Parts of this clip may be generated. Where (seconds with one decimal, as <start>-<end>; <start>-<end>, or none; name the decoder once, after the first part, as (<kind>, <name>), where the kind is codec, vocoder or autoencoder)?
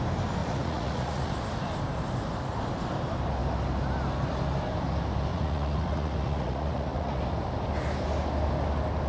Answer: 0.4-1.3 (vocoder, Vocos); 5.3-7.2